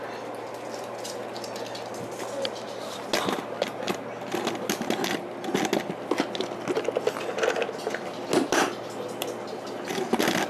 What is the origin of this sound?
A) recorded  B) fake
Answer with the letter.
A